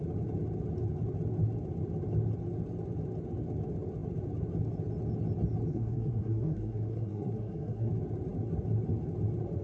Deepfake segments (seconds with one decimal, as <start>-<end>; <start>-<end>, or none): 5.7-7.9